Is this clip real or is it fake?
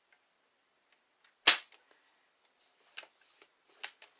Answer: real